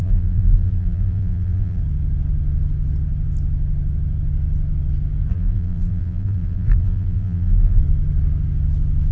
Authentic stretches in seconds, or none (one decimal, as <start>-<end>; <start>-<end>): 1.8-5.3; 7.8-9.1